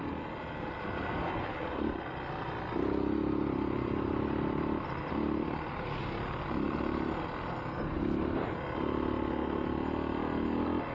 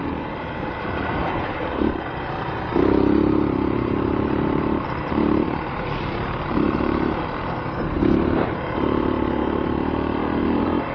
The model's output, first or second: second